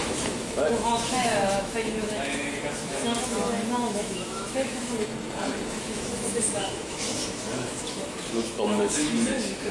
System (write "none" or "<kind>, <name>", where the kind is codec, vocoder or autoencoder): autoencoder, DAC-VAE